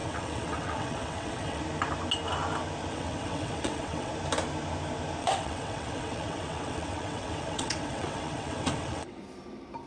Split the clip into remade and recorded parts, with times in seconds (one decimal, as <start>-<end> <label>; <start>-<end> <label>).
0.0-1.6 remade; 1.6-2.9 recorded; 2.9-4.1 remade; 4.1-5.2 recorded; 5.2-9.2 remade; 9.2-9.9 recorded